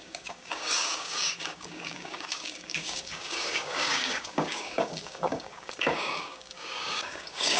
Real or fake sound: fake